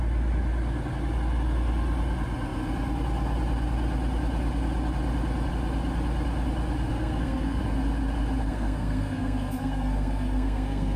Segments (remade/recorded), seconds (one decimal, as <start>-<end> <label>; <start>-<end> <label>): 0.0-6.9 recorded; 6.9-7.6 remade; 7.6-8.4 recorded; 8.4-11.0 remade

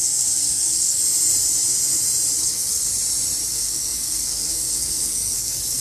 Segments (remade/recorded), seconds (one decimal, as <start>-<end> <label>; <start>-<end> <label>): 0.0-1.0 remade; 1.0-2.4 recorded; 2.4-2.9 remade; 2.9-3.5 recorded; 3.5-5.8 remade

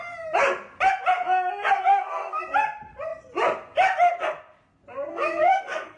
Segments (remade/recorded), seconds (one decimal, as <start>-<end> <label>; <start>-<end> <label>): 0.0-1.9 recorded; 1.9-2.4 remade; 2.4-5.1 recorded; 5.1-6.0 remade

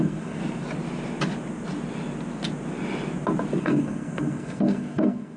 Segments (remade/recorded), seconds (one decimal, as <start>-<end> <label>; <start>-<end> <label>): 0.0-0.4 remade; 0.4-3.6 recorded; 3.6-5.4 remade

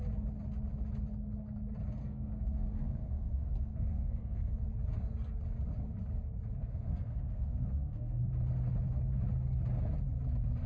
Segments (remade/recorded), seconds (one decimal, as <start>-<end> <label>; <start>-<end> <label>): 0.0-2.0 recorded; 2.0-4.5 remade; 4.5-6.6 recorded; 6.6-8.2 remade; 8.2-10.7 recorded

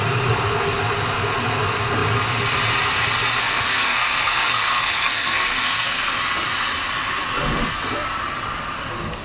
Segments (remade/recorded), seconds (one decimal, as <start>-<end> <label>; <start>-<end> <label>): 0.0-3.4 recorded; 3.4-6.2 remade; 6.2-9.2 recorded